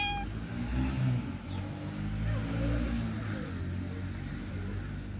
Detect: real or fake real